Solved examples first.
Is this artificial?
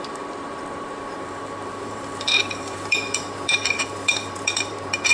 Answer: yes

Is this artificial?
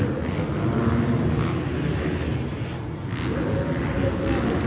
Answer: no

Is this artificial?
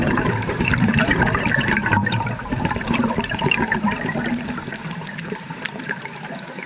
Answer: yes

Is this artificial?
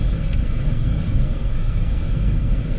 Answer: yes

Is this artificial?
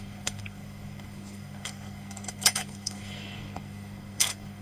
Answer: yes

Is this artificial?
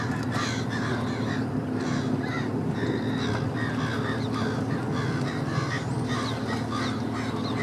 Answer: no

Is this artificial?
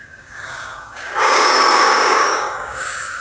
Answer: yes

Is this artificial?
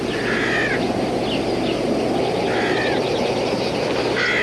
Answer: no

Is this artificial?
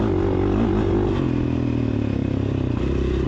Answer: no